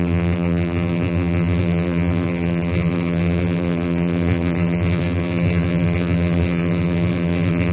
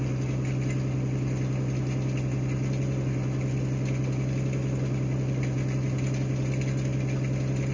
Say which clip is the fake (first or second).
first